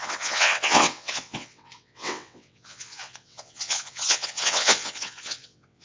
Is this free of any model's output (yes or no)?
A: no